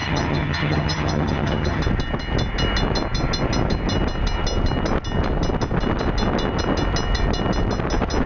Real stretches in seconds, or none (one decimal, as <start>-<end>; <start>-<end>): 1.8-8.3